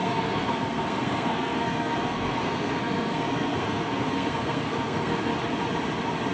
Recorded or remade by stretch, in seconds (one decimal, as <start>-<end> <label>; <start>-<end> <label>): 0.0-5.3 remade; 5.3-6.3 recorded